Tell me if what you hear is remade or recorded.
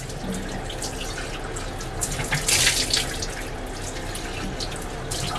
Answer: recorded